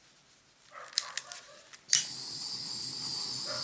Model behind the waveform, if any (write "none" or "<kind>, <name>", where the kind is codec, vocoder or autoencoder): none